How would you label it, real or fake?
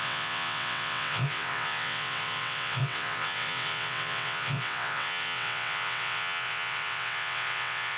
fake